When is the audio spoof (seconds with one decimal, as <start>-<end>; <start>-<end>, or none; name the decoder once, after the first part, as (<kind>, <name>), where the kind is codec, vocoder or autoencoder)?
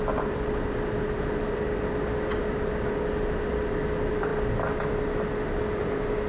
none